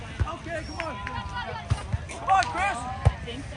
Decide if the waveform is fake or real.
real